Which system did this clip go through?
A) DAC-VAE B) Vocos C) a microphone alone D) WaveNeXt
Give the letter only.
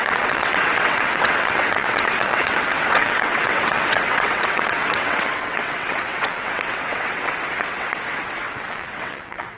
D